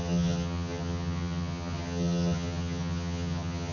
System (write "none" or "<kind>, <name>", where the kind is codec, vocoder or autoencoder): vocoder, HiFi-GAN